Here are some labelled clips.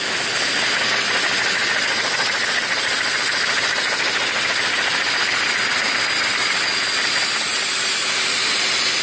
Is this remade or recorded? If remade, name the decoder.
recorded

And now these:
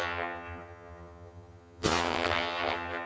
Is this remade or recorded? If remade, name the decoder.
remade, vocoder, HiFi-GAN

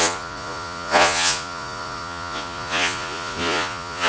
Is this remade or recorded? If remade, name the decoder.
remade, vocoder, Vocos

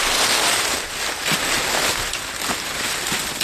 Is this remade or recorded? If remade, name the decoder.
recorded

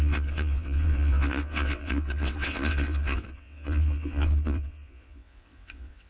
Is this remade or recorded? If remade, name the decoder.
remade, vocoder, WaveNeXt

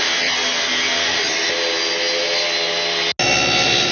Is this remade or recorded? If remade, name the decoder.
recorded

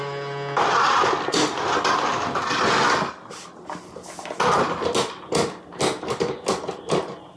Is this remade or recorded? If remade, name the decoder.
recorded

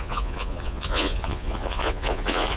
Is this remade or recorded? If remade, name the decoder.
remade, vocoder, Vocos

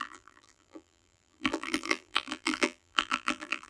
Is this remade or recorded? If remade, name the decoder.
remade, vocoder, BigVGAN v2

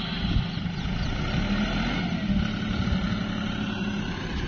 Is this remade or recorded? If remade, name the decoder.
recorded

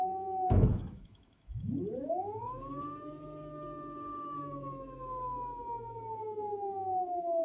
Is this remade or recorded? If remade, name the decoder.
remade, autoencoder, DAC-VAE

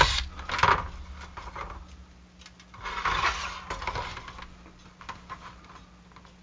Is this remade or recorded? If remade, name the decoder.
recorded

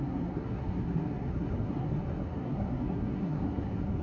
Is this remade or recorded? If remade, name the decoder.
remade, codec, SNAC